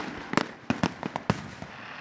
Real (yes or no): yes